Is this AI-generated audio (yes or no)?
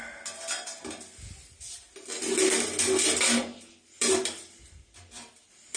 no